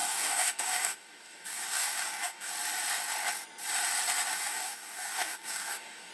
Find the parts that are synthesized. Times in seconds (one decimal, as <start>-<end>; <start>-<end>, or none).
0.0-2.5; 4.3-6.1